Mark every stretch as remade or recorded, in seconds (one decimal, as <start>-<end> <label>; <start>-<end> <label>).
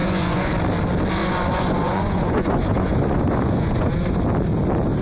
0.0-0.5 remade; 0.5-1.2 recorded; 1.2-4.2 remade; 4.2-5.0 recorded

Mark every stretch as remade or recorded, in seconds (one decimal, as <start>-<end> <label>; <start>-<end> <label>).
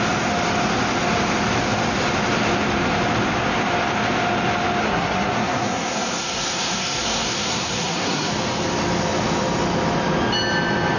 0.0-4.8 recorded; 4.8-8.3 remade; 8.3-11.0 recorded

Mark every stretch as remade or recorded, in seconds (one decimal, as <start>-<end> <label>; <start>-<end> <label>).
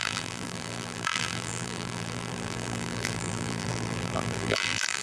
0.0-5.0 remade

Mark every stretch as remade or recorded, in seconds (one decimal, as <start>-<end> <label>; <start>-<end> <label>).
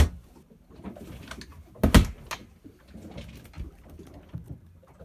0.0-5.0 recorded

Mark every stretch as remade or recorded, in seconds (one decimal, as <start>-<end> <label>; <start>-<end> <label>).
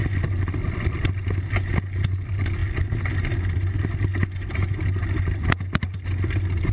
0.0-6.7 recorded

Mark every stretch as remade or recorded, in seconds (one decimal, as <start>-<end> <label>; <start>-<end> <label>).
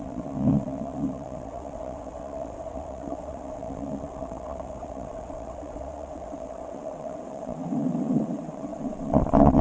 0.0-9.6 remade